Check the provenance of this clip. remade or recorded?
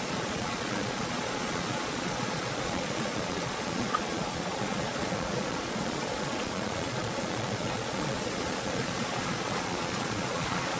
remade